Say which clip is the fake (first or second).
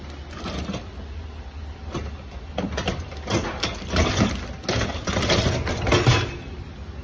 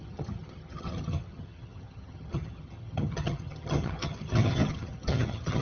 second